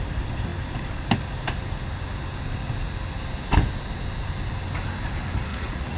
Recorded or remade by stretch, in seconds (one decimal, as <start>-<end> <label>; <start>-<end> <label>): 0.0-5.5 recorded; 5.5-6.0 remade

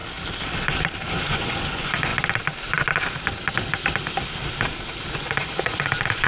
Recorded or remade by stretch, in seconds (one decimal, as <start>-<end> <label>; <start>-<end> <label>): 0.0-1.1 recorded; 1.1-2.1 remade; 2.1-5.1 recorded; 5.1-6.3 remade

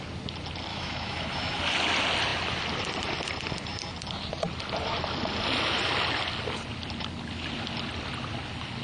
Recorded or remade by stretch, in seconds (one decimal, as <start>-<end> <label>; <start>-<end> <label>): 0.0-0.7 recorded; 0.7-1.6 remade; 1.6-8.8 recorded

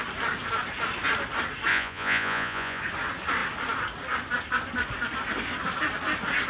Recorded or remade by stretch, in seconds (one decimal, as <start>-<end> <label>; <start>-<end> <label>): 0.0-1.7 recorded; 1.7-2.8 remade; 2.8-6.5 recorded